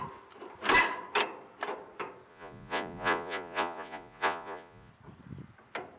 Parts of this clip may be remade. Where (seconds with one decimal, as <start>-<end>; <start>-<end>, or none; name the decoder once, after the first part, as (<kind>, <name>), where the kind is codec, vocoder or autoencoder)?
2.3-4.9 (vocoder, Vocos)